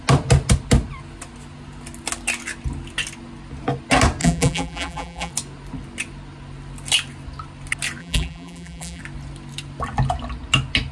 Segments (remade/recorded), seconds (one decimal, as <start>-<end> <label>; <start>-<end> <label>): 0.0-4.2 recorded; 4.2-5.3 remade; 5.3-8.0 recorded; 8.0-9.0 remade; 9.0-10.9 recorded